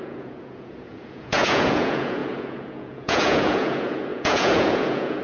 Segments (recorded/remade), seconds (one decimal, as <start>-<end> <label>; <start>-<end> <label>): 0.0-5.2 remade